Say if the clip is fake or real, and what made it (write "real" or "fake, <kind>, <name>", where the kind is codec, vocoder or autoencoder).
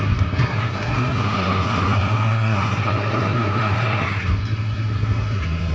fake, codec, SNAC